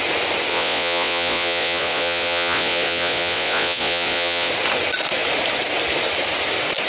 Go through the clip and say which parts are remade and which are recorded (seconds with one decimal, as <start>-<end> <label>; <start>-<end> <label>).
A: 0.0-0.5 recorded; 0.5-4.5 remade; 4.5-6.9 recorded